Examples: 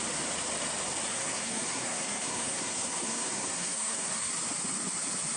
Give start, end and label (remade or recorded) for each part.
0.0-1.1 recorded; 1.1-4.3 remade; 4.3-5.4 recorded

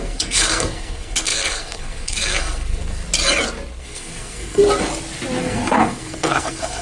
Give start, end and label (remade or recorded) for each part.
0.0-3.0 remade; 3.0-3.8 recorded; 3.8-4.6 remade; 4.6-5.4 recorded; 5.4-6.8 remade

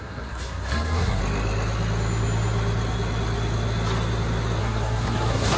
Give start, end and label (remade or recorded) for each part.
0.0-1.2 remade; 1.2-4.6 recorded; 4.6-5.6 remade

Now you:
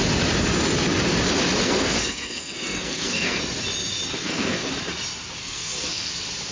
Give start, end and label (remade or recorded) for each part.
0.0-1.6 recorded; 1.6-3.4 remade; 3.4-4.2 recorded; 4.2-4.7 remade; 4.7-5.4 recorded; 5.4-6.1 remade; 6.1-6.5 recorded

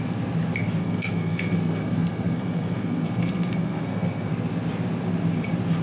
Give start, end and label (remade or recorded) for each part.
0.0-0.8 recorded; 0.8-4.3 remade; 4.3-5.8 recorded

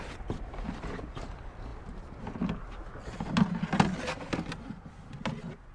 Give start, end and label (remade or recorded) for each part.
0.0-5.7 recorded